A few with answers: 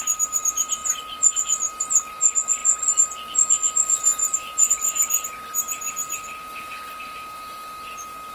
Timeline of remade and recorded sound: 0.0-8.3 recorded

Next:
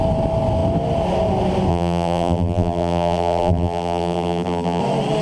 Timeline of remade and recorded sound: 0.0-1.7 recorded; 1.7-4.8 remade; 4.8-5.2 recorded